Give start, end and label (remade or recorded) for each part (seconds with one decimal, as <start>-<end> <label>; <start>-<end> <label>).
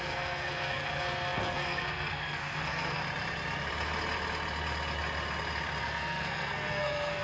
0.0-3.0 remade; 3.0-5.8 recorded; 5.8-7.2 remade